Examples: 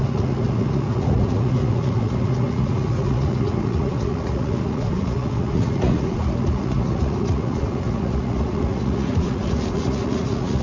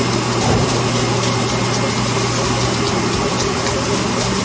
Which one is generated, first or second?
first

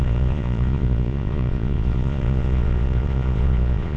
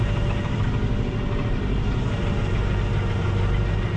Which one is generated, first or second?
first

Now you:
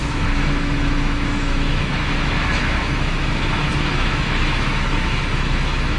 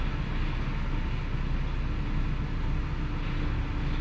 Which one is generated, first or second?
first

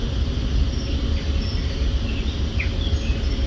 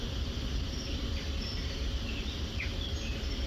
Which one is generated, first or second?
second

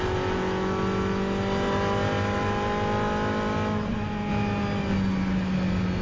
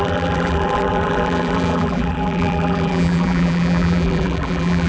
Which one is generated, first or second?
second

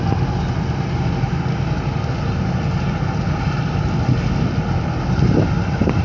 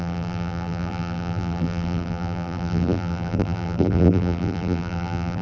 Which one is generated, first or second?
second